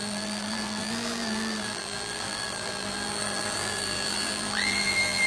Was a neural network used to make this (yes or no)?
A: yes